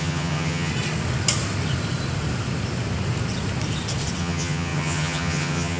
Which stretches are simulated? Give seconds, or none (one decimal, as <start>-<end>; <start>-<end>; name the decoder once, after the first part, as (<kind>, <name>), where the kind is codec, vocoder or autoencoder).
0.0-0.7 (vocoder, HiFi-GAN); 4.2-5.8